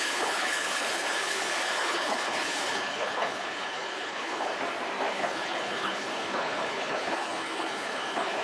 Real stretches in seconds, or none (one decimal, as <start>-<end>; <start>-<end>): 4.5-5.1

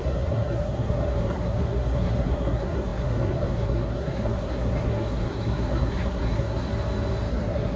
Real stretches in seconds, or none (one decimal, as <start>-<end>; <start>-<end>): 6.7-7.3

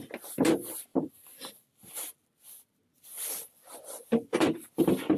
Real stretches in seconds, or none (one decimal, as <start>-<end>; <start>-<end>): 0.0-5.2

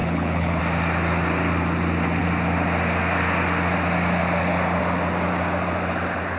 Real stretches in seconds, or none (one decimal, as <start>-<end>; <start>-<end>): 0.6-6.4

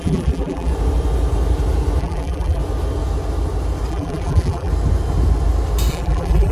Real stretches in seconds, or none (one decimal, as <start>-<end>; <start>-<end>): 0.7-2.0; 2.6-3.9; 4.7-5.9